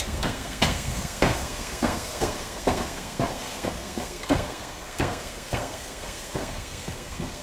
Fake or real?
fake